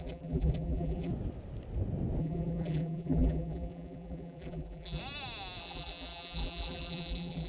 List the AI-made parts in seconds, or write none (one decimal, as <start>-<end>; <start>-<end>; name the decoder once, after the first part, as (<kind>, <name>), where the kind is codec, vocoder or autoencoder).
0.0-1.1 (vocoder, BigVGAN v2); 2.2-5.0; 5.6-7.5